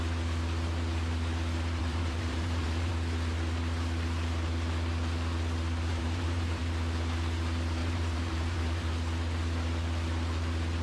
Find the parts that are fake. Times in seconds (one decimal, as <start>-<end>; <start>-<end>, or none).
1.8-2.9; 5.9-6.6; 7.8-8.9